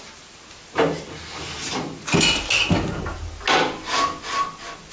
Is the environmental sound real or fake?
real